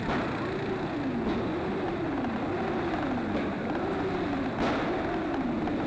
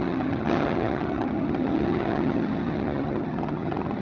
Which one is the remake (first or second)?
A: second